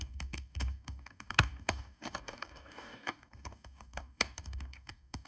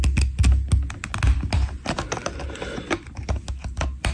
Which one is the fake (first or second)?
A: first